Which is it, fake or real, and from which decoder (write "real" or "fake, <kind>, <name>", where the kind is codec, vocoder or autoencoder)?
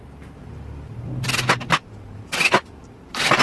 real